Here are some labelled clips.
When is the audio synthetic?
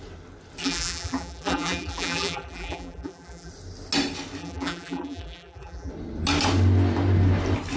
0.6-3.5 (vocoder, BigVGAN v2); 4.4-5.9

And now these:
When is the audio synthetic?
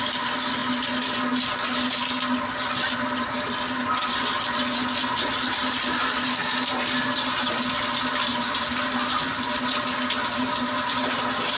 0.0-6.4 (vocoder, BigVGAN v2); 9.6-11.6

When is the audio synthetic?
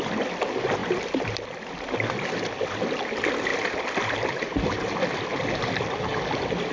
3.5-4.5 (vocoder, BigVGAN v2)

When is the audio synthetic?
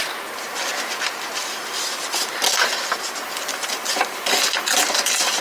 1.4-2.4 (vocoder, BigVGAN v2); 3.5-4.2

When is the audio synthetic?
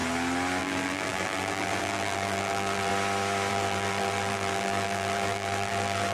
0.6-2.9 (vocoder, BigVGAN v2); 3.5-6.1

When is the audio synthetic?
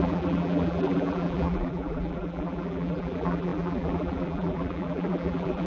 0.0-5.7 (vocoder, BigVGAN v2)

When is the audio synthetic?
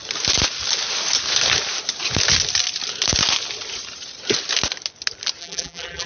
5.4-6.1 (vocoder, BigVGAN v2)